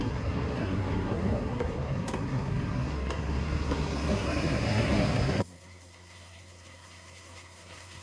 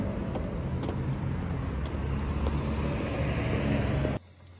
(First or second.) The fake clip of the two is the first